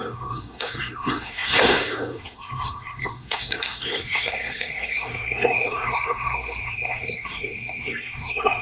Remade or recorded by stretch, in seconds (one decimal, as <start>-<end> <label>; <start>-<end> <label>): 0.0-8.6 remade